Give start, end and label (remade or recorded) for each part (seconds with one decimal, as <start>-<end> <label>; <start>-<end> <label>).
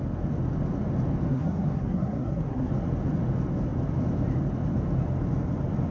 0.0-1.3 recorded; 1.3-2.7 remade; 2.7-5.9 recorded